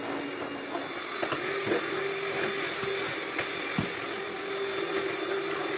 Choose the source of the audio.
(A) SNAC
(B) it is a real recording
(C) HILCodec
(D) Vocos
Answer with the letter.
B